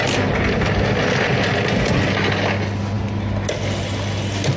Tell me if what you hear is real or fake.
real